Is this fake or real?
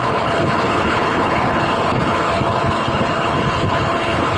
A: fake